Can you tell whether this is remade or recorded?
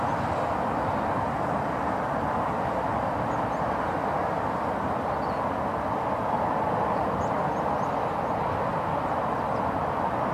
recorded